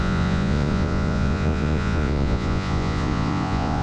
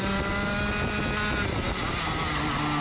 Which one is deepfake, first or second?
first